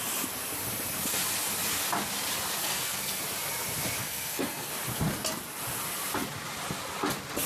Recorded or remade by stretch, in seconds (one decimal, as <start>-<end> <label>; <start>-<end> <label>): 0.0-2.6 recorded; 2.6-3.2 remade; 3.2-4.0 recorded; 4.0-4.7 remade; 4.7-7.5 recorded